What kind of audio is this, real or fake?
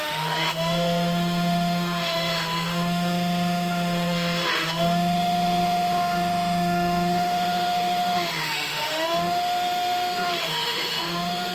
fake